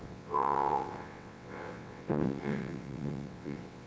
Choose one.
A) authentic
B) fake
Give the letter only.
B